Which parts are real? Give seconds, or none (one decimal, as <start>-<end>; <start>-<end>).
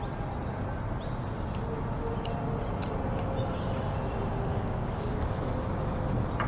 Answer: 0.0-4.5; 5.4-6.5